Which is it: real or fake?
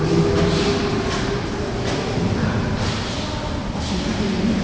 real